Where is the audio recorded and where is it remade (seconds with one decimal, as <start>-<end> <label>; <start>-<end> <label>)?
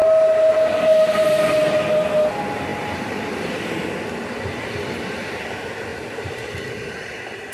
0.0-5.9 recorded; 5.9-6.9 remade; 6.9-7.5 recorded